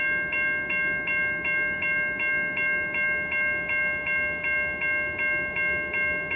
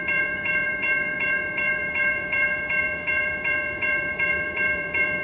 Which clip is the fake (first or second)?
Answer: second